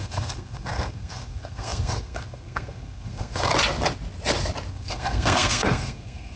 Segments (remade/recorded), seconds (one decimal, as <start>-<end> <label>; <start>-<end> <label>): 0.0-3.5 remade; 3.5-4.7 recorded; 4.7-6.4 remade